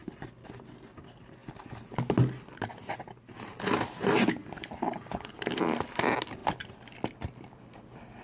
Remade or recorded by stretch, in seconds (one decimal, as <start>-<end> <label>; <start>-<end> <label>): 0.0-8.2 recorded